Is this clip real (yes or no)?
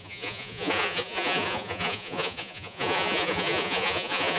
no